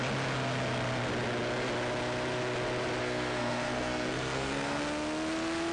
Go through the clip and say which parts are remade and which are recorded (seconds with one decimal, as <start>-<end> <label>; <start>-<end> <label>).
0.0-3.0 recorded; 3.0-4.8 remade; 4.8-5.7 recorded